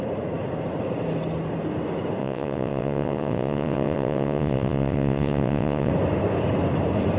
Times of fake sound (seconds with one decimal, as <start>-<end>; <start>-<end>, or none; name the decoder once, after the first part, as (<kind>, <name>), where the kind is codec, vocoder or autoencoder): 2.2-5.9 (vocoder, WaveNeXt)